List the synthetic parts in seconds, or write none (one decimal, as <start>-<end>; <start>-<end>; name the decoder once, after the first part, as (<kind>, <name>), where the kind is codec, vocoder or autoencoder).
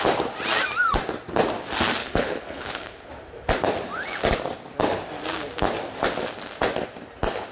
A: 2.0-3.1 (codec, HILCodec)